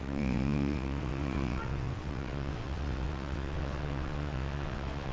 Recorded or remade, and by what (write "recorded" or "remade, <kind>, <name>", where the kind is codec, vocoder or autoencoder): remade, vocoder, WaveNeXt